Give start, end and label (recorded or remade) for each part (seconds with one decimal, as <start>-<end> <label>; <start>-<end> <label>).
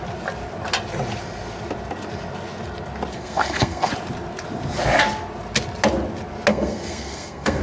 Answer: 0.0-3.1 recorded; 3.1-3.9 remade; 3.9-6.5 recorded; 6.5-7.6 remade